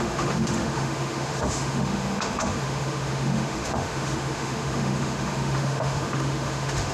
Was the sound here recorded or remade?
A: remade